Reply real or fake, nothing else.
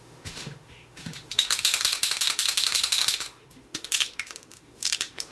fake